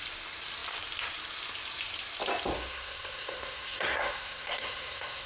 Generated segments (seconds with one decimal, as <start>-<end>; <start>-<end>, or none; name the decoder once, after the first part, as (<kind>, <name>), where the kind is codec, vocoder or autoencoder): 2.5-5.3 (codec, SNAC)